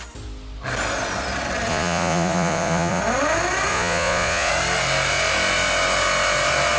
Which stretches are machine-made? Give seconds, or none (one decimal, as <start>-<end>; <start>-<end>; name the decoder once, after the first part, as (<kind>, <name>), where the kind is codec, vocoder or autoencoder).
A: 1.7-3.0 (vocoder, Vocos); 3.7-4.5